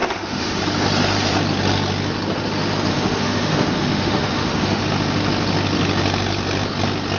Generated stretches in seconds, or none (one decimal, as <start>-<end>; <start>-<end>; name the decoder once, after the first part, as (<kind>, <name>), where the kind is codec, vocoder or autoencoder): 0.0-0.6 (autoencoder, DAC-VAE); 2.9-4.8